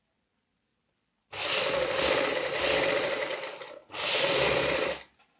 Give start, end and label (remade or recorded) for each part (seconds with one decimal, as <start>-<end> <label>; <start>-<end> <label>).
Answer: 0.0-5.4 recorded